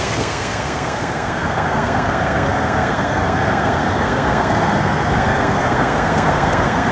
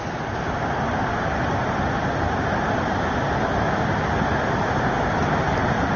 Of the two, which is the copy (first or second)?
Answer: first